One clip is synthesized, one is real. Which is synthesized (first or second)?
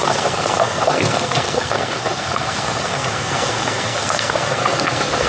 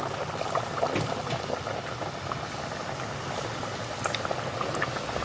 first